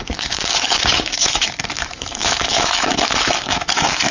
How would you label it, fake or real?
fake